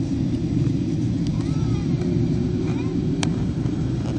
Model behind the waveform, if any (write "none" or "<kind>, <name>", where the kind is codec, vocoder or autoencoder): vocoder, BigVGAN v2